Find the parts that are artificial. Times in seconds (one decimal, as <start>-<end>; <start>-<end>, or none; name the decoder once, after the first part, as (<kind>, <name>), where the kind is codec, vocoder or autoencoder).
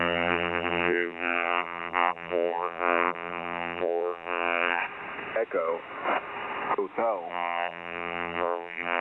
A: 0.0-4.8 (vocoder, BigVGAN v2); 7.3-9.0